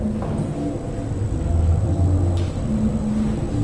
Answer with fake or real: real